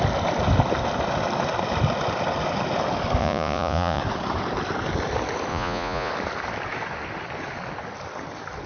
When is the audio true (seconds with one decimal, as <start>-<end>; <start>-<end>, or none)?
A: 0.0-3.2; 4.0-5.5; 6.1-8.7